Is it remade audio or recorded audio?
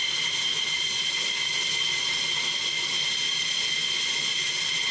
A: recorded